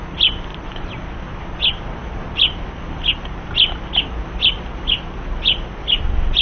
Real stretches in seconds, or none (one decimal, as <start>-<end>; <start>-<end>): 0.0-6.4